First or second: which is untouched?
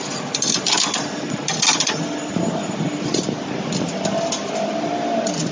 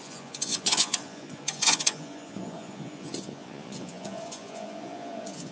first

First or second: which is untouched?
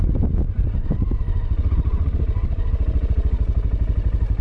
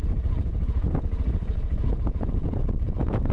first